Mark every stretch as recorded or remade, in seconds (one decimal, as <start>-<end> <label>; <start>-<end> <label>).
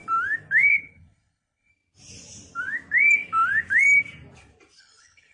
0.0-0.7 recorded; 0.7-1.7 remade; 1.7-4.8 recorded; 4.8-5.3 remade